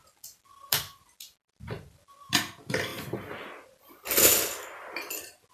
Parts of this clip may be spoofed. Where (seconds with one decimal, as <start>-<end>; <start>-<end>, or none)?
0.0-2.9